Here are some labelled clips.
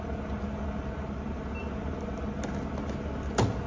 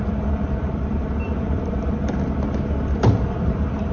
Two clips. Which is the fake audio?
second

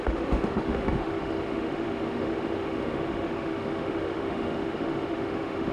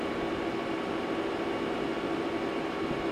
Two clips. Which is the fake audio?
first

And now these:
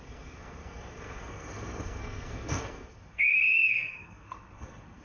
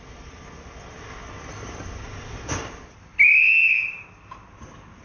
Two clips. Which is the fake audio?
first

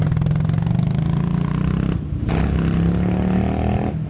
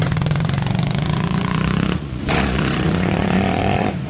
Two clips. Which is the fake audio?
second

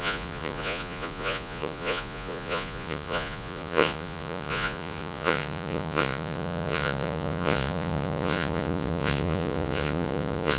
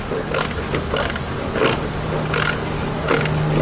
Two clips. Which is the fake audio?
first